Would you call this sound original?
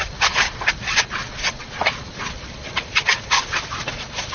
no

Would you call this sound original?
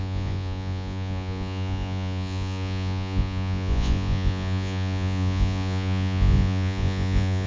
no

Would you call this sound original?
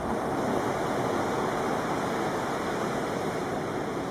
yes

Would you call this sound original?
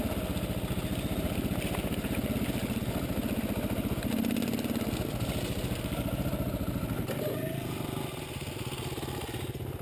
yes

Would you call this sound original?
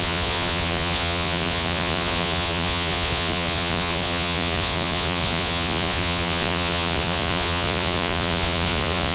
no